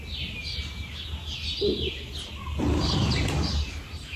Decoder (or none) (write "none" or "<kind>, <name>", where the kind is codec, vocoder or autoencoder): none